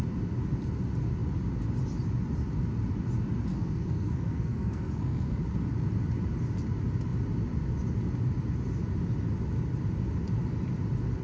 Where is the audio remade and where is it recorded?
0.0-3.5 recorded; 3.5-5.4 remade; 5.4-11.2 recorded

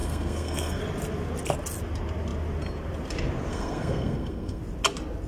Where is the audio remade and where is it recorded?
0.0-0.8 remade; 0.8-3.5 recorded; 3.5-4.6 remade; 4.6-5.3 recorded

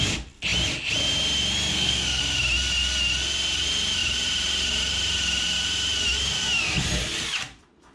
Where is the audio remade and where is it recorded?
0.0-1.7 recorded; 1.7-2.2 remade; 2.2-7.9 recorded

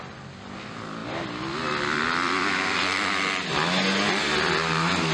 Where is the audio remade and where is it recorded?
0.0-5.1 recorded

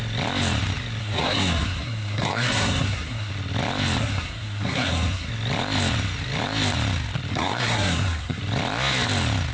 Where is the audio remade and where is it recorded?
0.0-1.0 recorded; 1.0-3.3 remade; 3.3-4.0 recorded; 4.0-5.3 remade; 5.3-7.3 recorded; 7.3-8.4 remade; 8.4-9.5 recorded

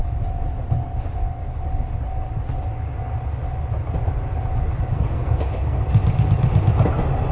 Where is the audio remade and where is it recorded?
0.0-4.9 recorded; 4.9-5.8 remade; 5.8-7.3 recorded

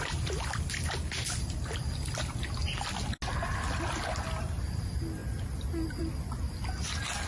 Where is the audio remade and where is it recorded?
0.0-7.3 recorded